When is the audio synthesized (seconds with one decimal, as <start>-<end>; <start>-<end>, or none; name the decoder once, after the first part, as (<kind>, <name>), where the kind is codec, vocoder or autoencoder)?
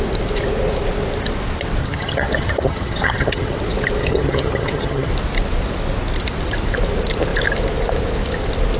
1.8-3.6 (vocoder, HiFi-GAN); 4.0-5.1